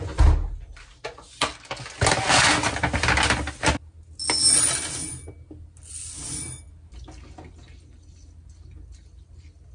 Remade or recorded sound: recorded